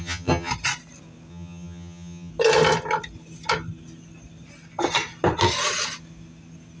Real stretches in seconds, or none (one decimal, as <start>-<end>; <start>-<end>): 0.5-1.3; 2.3-6.8